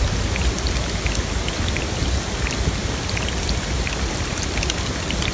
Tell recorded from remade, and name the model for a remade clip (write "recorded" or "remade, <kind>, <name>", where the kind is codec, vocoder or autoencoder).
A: recorded